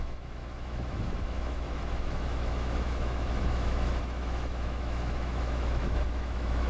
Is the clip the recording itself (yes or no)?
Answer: no